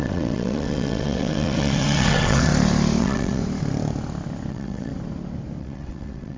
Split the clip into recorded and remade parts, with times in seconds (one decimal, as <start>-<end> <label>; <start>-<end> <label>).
0.0-2.5 remade; 2.5-3.0 recorded; 3.0-3.4 remade; 3.4-4.5 recorded; 4.5-4.9 remade; 4.9-5.6 recorded; 5.6-6.4 remade

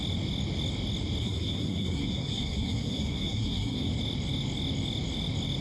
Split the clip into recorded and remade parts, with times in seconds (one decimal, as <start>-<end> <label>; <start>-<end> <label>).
0.0-1.2 recorded; 1.2-3.9 remade; 3.9-5.6 recorded

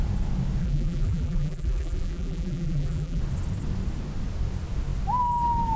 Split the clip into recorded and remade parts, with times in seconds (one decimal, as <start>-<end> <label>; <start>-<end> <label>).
0.0-0.6 recorded; 0.6-3.2 remade; 3.2-5.8 recorded

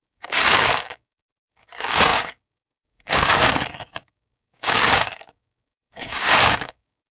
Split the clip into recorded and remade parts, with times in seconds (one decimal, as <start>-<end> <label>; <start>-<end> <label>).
0.0-7.1 remade

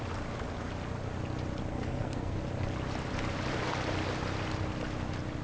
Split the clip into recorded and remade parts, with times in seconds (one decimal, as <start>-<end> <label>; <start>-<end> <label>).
0.0-1.7 recorded; 1.7-2.4 remade; 2.4-5.4 recorded